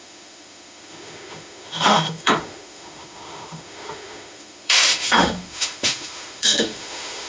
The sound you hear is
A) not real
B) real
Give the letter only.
A